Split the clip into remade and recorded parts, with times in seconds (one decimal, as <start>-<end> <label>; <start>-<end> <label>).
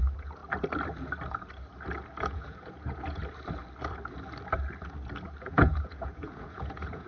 0.0-0.4 remade; 0.4-2.3 recorded; 2.3-3.2 remade; 3.2-5.4 recorded; 5.4-7.1 remade